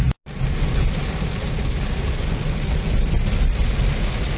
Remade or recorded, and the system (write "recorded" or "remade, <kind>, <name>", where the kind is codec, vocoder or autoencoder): recorded